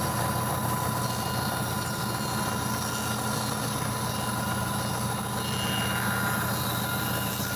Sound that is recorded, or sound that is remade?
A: recorded